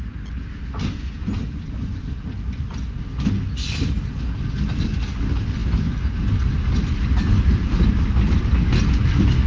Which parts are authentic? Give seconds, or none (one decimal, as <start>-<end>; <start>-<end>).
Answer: 0.0-9.5